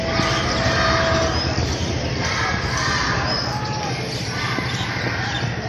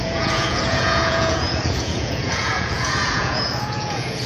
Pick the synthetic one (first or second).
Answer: second